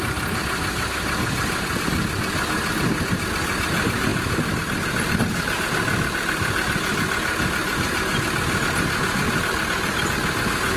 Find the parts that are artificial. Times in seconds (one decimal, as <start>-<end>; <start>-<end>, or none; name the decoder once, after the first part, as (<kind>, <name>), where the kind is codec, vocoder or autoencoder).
none